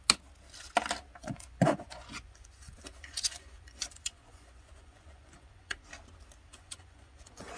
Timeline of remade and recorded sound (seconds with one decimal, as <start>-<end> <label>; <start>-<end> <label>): 0.0-1.2 recorded; 1.2-5.8 remade; 5.8-6.5 recorded; 6.5-7.6 remade